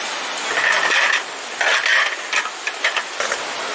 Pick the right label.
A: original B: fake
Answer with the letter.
A